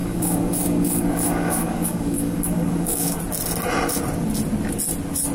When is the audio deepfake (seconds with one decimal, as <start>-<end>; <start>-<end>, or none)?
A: 0.0-3.2